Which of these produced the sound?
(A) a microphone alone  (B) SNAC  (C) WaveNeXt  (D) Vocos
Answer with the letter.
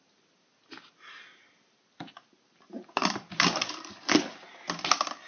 A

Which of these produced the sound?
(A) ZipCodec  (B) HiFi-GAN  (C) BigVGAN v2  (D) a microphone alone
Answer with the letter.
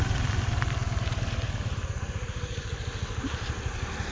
D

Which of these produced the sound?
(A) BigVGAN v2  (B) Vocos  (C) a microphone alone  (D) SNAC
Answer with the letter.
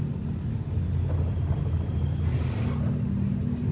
C